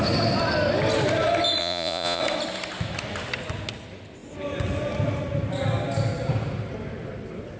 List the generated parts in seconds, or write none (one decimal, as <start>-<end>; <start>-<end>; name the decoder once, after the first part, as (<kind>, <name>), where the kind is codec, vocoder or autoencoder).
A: 1.6-2.2 (vocoder, Vocos)